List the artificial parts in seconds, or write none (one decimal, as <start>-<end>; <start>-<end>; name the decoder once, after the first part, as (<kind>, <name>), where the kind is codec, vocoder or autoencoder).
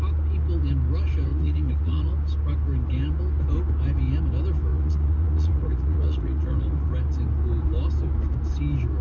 1.3-2.1 (vocoder, Vocos); 4.7-6.9